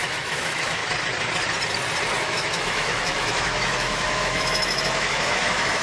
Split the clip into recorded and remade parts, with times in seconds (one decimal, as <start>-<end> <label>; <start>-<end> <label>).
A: 0.0-0.8 remade; 0.8-2.2 recorded; 2.2-5.8 remade

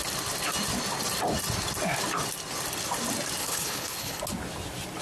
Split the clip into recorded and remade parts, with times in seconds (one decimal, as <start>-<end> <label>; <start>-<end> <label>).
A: 0.0-3.4 recorded; 3.4-4.2 remade; 4.2-5.0 recorded

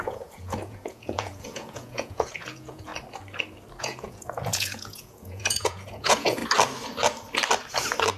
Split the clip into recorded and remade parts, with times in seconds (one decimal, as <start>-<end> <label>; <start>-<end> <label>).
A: 0.0-2.9 remade; 2.9-3.8 recorded; 3.8-6.4 remade; 6.4-8.2 recorded

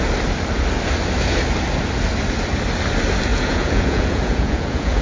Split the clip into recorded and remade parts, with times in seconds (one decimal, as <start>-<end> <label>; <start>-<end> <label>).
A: 0.0-3.3 recorded; 3.3-5.0 remade

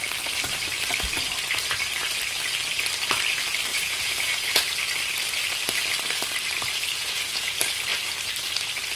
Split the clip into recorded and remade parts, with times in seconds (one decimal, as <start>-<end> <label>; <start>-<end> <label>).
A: 0.0-3.7 recorded; 3.7-4.6 remade; 4.6-7.0 recorded; 7.0-7.5 remade; 7.5-9.0 recorded